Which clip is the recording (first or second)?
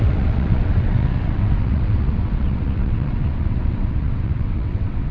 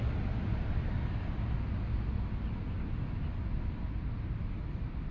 second